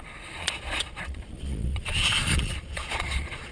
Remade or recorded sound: remade